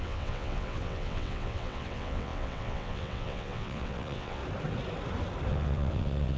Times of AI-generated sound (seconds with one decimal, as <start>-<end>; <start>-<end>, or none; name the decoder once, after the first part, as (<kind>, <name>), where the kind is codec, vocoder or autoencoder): 0.0-4.4 (vocoder, WaveNeXt); 5.5-6.4